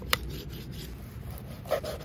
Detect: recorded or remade recorded